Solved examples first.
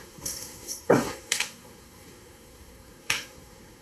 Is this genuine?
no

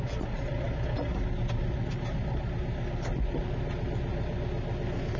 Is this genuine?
yes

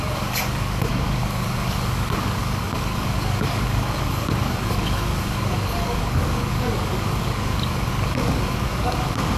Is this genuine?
no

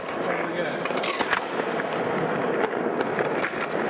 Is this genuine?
yes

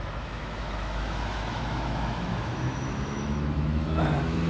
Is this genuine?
no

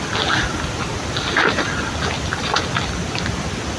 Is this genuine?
yes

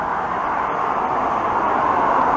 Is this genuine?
yes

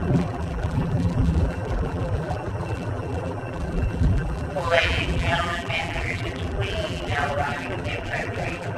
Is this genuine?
no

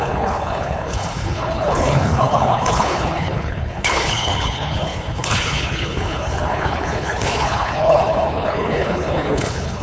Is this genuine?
no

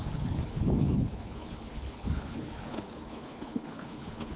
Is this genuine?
no